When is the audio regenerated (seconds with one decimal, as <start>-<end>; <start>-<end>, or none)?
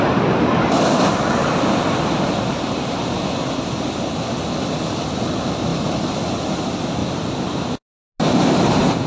none